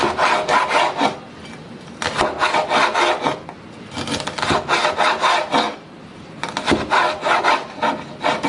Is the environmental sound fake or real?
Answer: real